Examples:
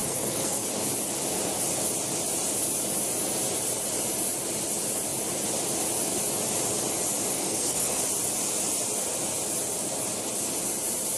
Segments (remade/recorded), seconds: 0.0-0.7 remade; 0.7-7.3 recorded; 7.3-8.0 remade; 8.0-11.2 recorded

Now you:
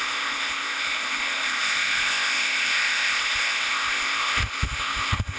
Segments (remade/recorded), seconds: 0.0-5.4 remade